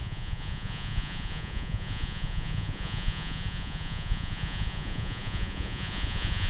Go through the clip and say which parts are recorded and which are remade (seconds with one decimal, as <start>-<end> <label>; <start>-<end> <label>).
0.0-6.5 remade